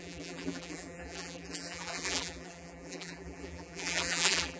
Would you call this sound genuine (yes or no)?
no